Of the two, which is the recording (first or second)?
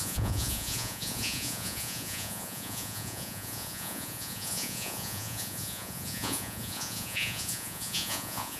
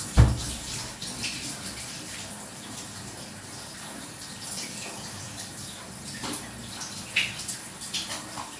second